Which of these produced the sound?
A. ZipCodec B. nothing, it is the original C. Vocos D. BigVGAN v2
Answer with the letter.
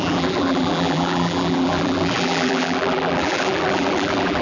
D